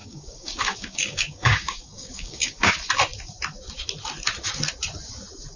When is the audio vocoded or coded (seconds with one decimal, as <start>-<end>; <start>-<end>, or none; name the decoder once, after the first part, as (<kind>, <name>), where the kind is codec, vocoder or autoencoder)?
0.0-2.7 (codec, DAC)